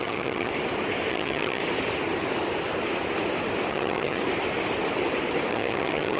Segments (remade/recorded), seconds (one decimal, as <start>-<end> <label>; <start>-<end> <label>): 0.0-0.5 remade; 0.5-1.1 recorded; 1.1-1.6 remade; 1.6-3.7 recorded; 3.7-4.2 remade; 4.2-5.5 recorded; 5.5-6.2 remade